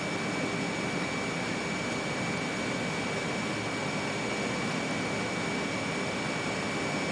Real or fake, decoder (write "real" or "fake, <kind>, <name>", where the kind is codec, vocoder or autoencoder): real